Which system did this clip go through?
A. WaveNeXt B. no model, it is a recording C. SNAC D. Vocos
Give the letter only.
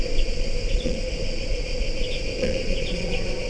D